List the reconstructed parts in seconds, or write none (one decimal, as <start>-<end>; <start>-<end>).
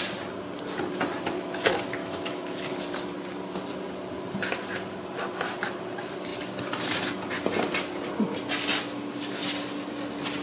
2.0-2.8